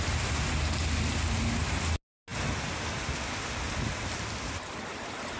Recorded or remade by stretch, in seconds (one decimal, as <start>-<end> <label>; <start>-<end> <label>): 0.0-5.4 recorded